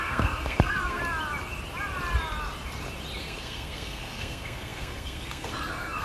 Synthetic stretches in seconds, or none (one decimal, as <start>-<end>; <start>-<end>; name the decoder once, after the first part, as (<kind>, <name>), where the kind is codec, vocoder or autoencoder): 0.0-1.0 (codec, SNAC); 3.2-6.0